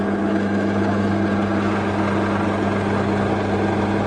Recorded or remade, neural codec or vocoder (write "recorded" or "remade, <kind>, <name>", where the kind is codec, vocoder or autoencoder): recorded